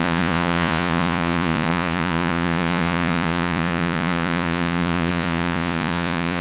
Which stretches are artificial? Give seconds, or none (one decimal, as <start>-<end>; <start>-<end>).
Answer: 0.0-6.4